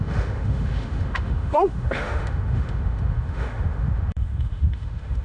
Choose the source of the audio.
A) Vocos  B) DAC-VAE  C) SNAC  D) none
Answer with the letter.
B